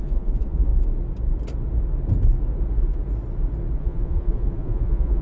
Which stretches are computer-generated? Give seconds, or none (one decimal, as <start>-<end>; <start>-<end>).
0.0-0.7; 3.8-5.2